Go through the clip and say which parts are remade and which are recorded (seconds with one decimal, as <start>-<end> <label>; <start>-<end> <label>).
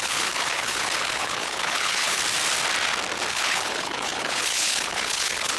0.0-2.2 remade; 2.2-3.3 recorded; 3.3-5.6 remade